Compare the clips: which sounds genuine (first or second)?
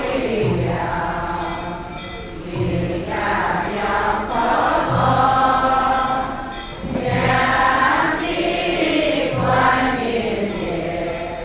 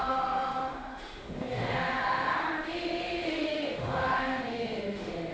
first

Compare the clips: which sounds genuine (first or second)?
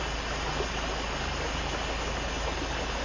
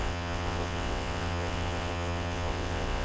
first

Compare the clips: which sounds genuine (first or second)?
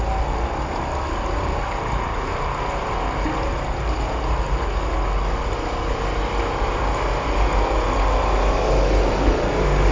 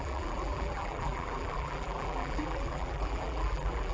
first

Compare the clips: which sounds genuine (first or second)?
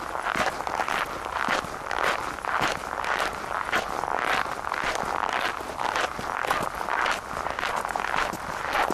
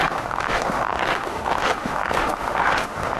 first